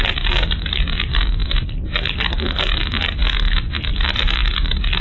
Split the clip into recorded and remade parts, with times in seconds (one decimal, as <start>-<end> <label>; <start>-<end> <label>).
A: 0.0-5.0 recorded